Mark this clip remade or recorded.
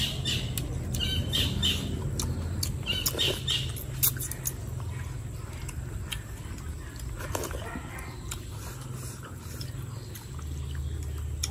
recorded